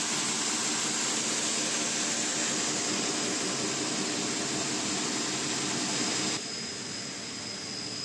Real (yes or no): yes